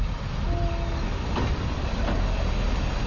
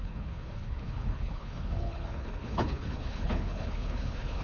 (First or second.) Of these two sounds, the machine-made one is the second